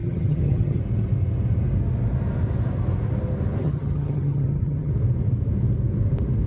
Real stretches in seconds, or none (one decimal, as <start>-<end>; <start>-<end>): 0.8-3.6; 4.9-6.5